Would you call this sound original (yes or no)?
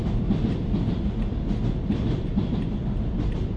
yes